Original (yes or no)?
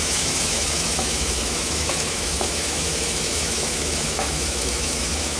no